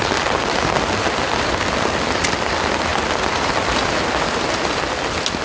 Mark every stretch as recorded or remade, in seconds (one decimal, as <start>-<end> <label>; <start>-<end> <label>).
0.0-5.4 recorded